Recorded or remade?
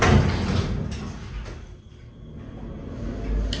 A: recorded